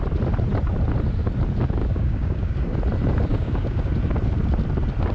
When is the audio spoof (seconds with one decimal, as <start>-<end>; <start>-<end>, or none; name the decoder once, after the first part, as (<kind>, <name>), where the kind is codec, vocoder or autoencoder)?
1.8-2.8 (codec, DAC); 3.3-3.9